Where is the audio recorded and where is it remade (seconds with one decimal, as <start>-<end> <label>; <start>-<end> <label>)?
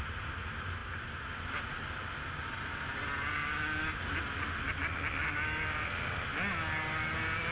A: 0.0-7.5 recorded